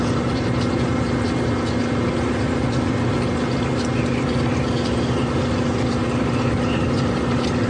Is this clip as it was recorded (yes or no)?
yes